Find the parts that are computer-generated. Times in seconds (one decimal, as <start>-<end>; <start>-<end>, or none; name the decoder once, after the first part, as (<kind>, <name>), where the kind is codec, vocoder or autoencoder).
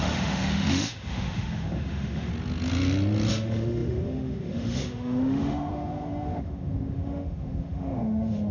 0.0-2.3 (autoencoder, DAC-VAE); 3.3-8.5